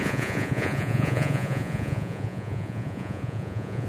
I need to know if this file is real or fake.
fake